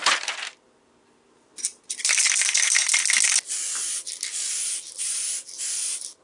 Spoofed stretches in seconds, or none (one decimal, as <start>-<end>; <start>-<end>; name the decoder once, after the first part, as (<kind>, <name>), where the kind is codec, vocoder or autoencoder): none